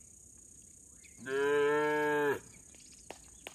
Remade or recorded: recorded